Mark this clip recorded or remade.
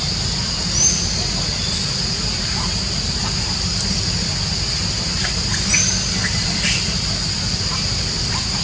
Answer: recorded